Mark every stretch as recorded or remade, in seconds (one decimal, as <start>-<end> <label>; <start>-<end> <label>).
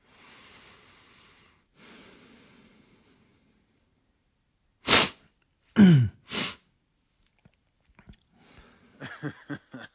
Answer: 0.0-9.9 recorded